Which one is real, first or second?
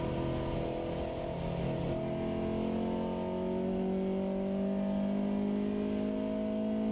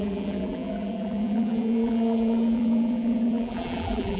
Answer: first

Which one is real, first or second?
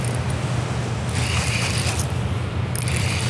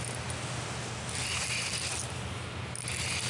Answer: second